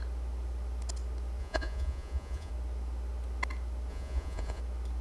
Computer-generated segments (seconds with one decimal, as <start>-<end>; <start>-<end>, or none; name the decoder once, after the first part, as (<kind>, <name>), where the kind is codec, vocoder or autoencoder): 1.4-2.5 (vocoder, Vocos); 3.9-4.6